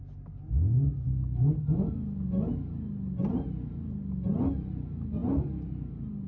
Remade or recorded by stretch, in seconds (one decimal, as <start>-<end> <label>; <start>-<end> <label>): 0.0-6.3 recorded

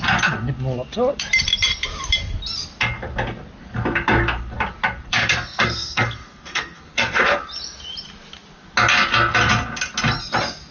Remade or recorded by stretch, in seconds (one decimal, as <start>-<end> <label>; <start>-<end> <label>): 0.0-5.1 recorded; 5.1-7.4 remade; 7.4-10.7 recorded